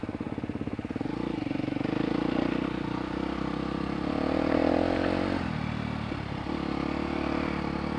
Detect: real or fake real